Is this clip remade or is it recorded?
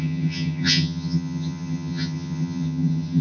remade